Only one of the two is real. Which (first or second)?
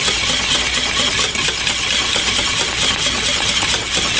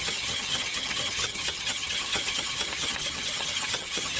first